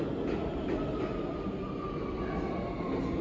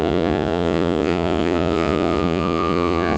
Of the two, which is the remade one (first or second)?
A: second